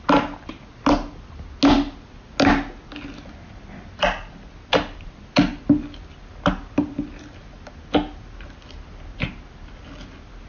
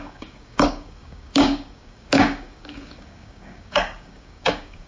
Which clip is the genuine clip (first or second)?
first